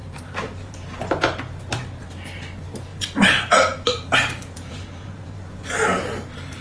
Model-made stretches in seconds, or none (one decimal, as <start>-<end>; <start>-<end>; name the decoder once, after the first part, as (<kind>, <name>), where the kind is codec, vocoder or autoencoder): 0.0-0.7 (vocoder, BigVGAN v2); 2.9-6.0